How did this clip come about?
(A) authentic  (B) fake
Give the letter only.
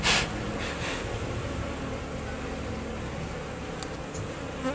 A